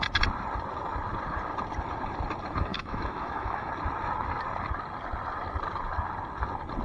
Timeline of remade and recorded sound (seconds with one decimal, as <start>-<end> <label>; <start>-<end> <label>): 0.0-2.7 recorded; 2.7-3.7 remade; 3.7-6.8 recorded